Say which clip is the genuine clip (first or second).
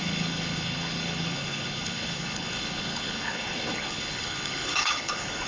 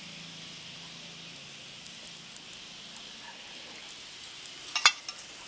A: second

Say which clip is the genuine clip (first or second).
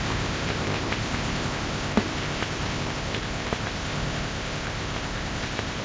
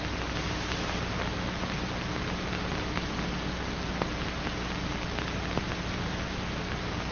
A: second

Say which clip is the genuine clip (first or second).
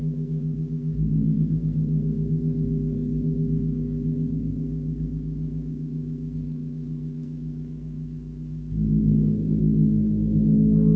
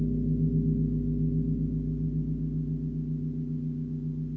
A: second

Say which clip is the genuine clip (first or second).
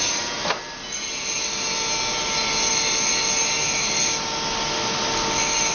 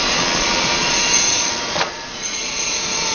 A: first